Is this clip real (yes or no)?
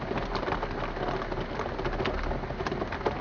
yes